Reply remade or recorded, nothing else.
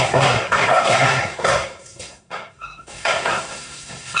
remade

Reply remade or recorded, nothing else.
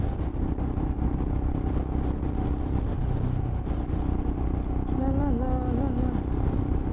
recorded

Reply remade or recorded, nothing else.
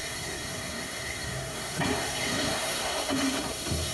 remade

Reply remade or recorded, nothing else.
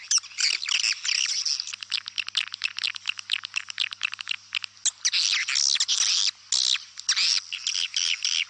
recorded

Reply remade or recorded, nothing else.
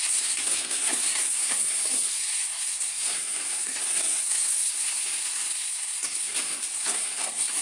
remade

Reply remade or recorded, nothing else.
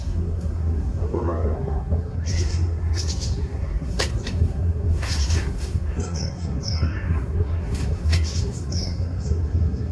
remade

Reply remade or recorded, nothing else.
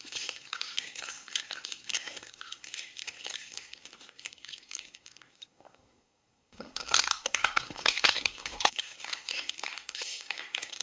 remade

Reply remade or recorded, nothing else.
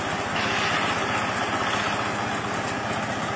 recorded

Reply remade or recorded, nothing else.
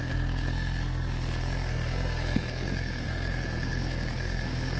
remade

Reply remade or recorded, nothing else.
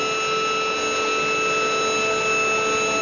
recorded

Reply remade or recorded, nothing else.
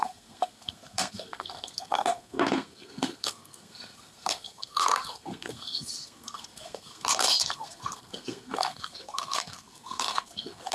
remade